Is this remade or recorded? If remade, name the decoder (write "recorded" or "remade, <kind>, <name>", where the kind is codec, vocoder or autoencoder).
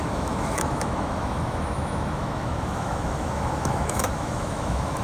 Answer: remade, autoencoder, DAC-VAE